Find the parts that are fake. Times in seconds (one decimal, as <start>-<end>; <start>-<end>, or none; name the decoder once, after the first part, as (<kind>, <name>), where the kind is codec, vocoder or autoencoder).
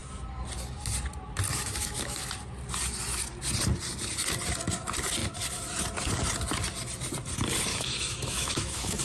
1.5-2.3 (autoencoder, DAC-VAE); 7.7-9.0